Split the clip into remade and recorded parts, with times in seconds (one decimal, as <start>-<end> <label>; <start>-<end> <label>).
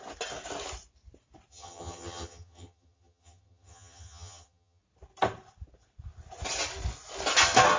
0.0-1.5 recorded; 1.5-4.8 remade; 4.8-7.8 recorded